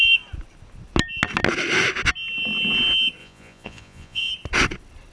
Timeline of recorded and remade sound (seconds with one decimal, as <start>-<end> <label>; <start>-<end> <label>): 0.0-3.2 recorded; 3.2-4.3 remade; 4.3-5.1 recorded